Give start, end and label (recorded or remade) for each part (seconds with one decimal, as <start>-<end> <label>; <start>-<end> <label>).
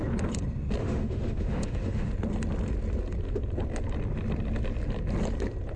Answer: 0.0-0.8 recorded; 0.8-2.1 remade; 2.1-5.8 recorded